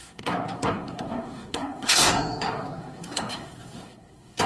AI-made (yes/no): yes